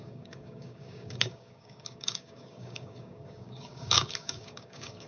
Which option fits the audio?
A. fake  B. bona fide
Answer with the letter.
A